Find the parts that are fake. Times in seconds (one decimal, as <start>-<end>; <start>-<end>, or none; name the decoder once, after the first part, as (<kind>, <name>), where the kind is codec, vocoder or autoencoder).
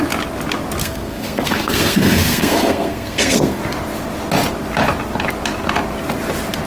0.8-3.6 (codec, SNAC)